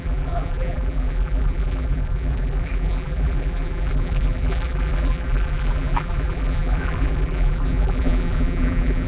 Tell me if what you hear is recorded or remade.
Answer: remade